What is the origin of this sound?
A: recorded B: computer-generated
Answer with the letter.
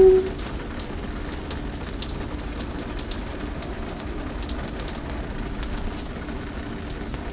A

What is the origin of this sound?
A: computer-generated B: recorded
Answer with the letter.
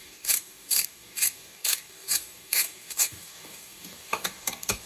A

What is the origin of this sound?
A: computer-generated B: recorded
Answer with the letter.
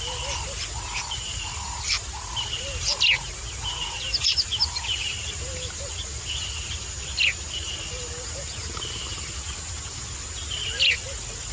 B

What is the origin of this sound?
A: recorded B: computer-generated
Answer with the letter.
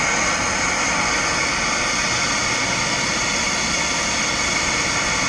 A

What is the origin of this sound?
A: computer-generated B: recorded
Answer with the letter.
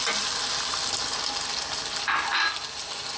B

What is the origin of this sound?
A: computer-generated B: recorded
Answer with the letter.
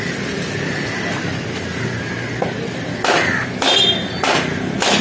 B